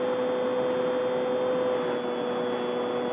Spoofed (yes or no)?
no